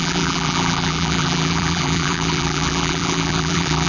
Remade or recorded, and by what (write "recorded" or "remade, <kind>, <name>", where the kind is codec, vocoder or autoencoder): remade, vocoder, BigVGAN v2